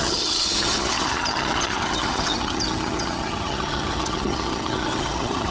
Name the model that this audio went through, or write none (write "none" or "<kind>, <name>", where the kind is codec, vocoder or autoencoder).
vocoder, HiFi-GAN